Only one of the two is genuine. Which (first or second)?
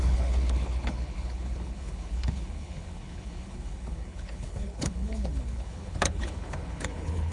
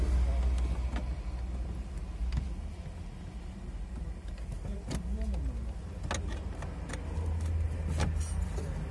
second